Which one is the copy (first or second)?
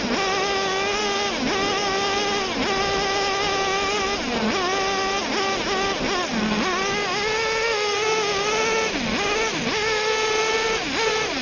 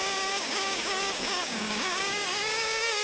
second